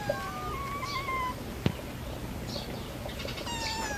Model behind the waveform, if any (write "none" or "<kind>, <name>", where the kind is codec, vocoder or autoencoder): none